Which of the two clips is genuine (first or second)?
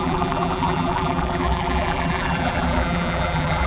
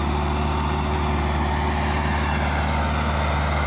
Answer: second